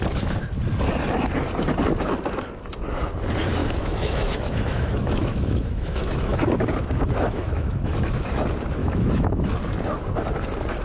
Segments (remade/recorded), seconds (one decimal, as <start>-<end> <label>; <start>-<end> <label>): 0.0-3.6 recorded; 3.6-8.4 remade; 8.4-8.8 recorded; 8.8-9.5 remade; 9.5-10.8 recorded